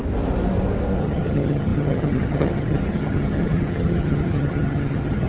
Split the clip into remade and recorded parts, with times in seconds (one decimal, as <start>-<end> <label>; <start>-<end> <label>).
0.0-1.0 recorded; 1.0-5.3 remade